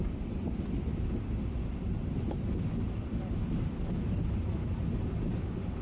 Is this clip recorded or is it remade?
recorded